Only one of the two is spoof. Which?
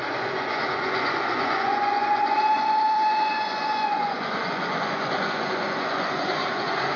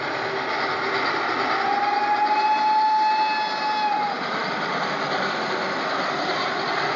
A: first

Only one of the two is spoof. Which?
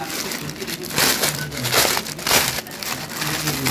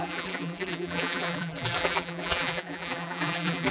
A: second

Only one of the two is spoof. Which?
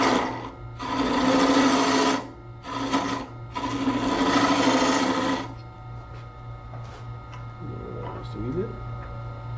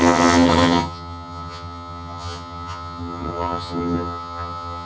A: second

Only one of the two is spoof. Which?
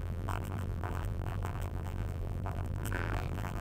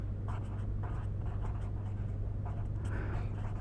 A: first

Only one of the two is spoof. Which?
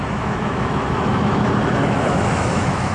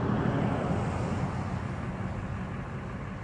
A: first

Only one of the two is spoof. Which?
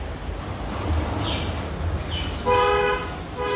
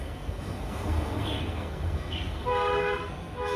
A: second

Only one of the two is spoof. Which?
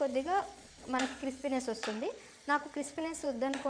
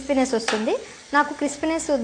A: first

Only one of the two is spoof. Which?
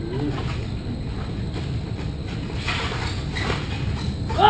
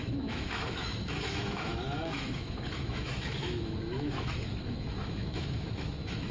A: second